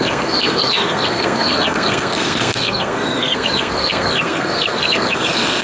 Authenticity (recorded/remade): remade